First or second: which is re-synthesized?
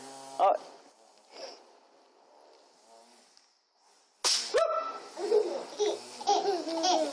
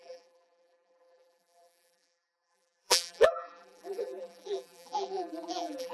second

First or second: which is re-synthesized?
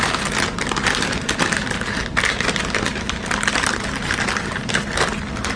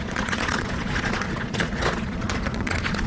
second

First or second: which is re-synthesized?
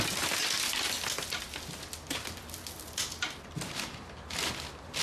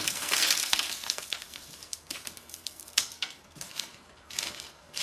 second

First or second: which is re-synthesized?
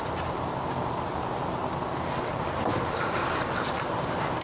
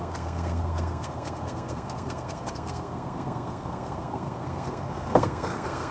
second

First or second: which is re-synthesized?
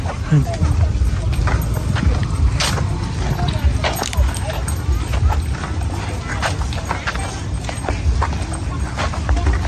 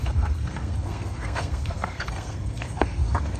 second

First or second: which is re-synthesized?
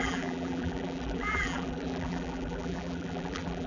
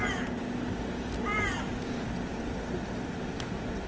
first